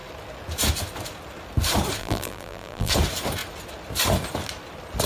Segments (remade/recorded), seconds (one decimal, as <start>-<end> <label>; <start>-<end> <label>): 0.0-2.0 recorded; 2.0-2.9 remade; 2.9-5.1 recorded